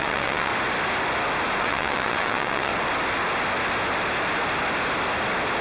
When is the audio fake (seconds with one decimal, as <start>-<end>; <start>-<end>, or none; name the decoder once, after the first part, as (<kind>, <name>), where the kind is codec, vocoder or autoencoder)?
0.0-0.5 (vocoder, WaveNeXt); 1.6-2.7